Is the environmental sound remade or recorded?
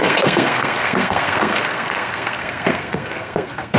remade